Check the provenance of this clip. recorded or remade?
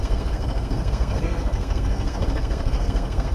remade